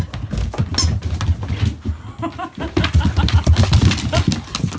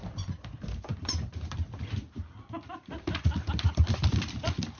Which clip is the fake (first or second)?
second